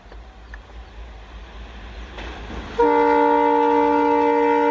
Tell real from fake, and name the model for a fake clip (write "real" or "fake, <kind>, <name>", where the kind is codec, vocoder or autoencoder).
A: real